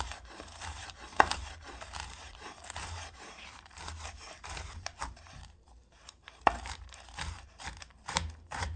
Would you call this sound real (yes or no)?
no